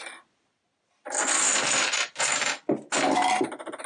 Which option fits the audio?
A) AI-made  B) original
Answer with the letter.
B